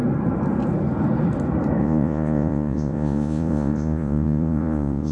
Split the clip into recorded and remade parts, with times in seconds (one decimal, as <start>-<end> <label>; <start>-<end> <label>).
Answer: 0.0-1.8 recorded; 1.8-5.1 remade